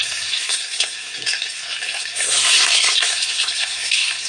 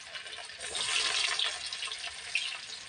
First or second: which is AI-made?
first